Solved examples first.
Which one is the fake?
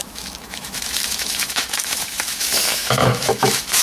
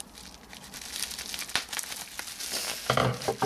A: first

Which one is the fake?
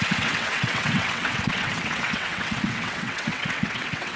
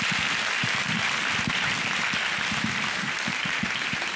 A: first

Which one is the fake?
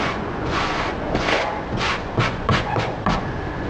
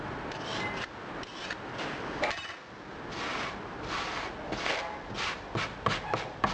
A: first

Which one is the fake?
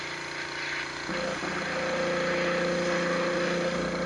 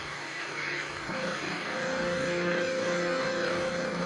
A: second